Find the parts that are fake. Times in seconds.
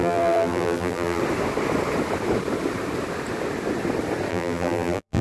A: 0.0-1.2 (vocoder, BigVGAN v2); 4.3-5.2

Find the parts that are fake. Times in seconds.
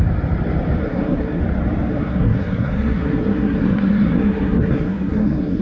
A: 0.8-1.4 (codec, SNAC); 1.9-5.6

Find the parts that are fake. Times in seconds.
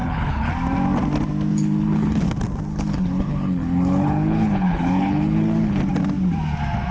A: 0.0-0.5 (codec, HILCodec); 1.5-2.3; 2.7-5.8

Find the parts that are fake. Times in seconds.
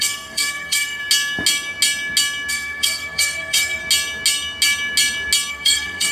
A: 0.0-1.0 (codec, SNAC); 2.5-3.8; 5.5-6.1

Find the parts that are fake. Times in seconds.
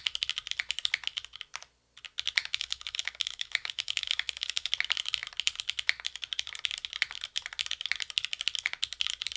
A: 2.4-4.7 (autoencoder, DAC-VAE)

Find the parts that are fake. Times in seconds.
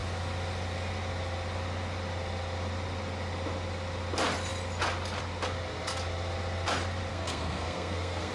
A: 7.1-8.3 (codec, SNAC)